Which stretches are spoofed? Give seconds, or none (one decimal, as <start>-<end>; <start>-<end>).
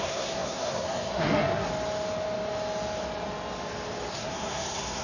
0.0-1.7; 4.1-5.0